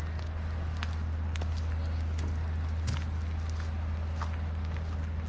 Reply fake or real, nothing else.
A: real